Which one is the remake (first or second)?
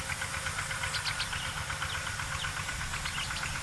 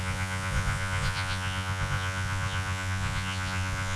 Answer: second